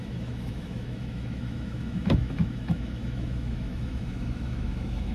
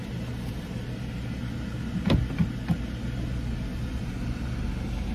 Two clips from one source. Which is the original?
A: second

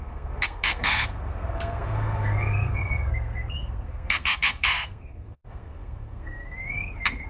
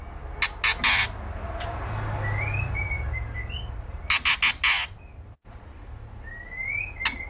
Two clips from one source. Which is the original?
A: second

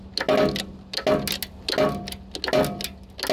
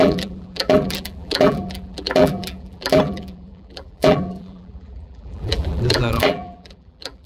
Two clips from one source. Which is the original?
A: first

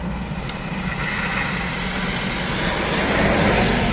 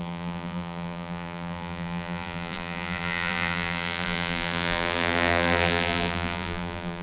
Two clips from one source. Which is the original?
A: first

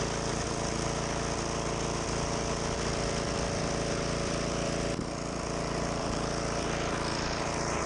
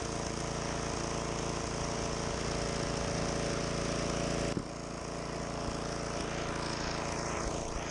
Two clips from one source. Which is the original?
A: second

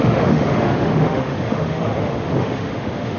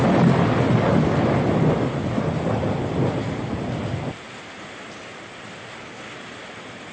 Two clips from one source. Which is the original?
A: second